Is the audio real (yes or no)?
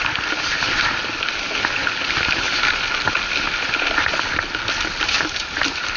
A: yes